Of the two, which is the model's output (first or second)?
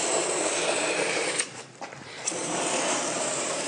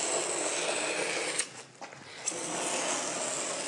first